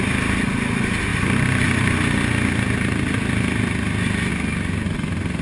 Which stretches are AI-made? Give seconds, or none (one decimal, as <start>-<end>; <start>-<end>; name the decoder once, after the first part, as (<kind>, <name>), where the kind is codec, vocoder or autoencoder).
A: none